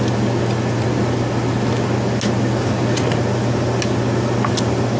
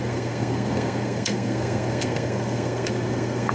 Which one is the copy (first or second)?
second